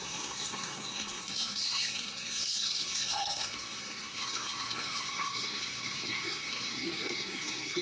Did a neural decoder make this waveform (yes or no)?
yes